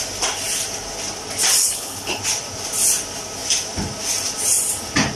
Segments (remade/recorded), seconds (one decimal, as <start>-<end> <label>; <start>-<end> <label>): 0.0-1.6 recorded; 1.6-2.2 remade; 2.2-5.2 recorded